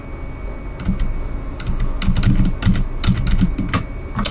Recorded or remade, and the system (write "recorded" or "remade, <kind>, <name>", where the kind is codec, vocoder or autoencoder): recorded